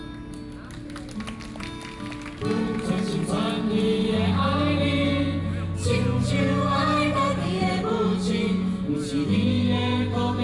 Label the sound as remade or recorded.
recorded